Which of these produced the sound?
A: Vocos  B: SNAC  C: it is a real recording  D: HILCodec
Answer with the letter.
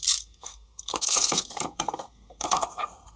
B